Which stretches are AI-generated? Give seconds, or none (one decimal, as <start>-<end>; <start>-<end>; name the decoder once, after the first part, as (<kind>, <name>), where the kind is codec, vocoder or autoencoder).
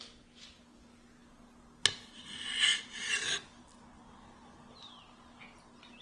none